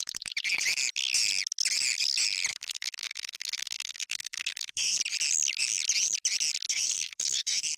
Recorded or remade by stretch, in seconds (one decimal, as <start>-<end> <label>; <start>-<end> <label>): 0.0-2.5 recorded; 2.5-5.0 remade; 5.0-6.7 recorded; 6.7-7.8 remade